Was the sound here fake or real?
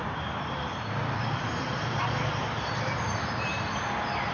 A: fake